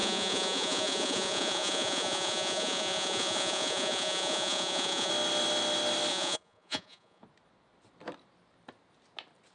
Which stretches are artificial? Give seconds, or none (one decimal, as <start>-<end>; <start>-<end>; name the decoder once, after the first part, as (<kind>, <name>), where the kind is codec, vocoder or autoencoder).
0.0-5.1 (vocoder, Vocos); 6.1-7.2

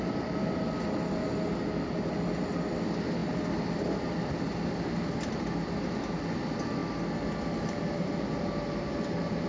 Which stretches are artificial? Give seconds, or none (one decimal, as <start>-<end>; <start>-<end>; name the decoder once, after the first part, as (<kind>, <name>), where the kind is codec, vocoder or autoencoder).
none